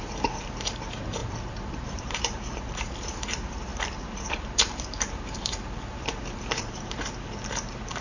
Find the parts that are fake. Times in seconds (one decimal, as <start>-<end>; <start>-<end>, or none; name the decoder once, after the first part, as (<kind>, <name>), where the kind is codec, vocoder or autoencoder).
0.0-8.0 (vocoder, BigVGAN v2)